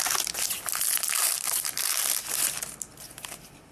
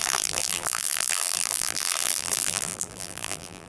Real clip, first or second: first